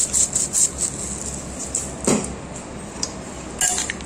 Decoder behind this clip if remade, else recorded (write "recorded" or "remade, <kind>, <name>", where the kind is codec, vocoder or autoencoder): recorded